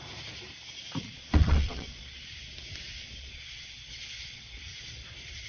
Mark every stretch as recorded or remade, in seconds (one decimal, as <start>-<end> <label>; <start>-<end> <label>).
0.0-1.0 recorded; 1.0-2.3 remade; 2.3-3.0 recorded; 3.0-4.6 remade; 4.6-5.5 recorded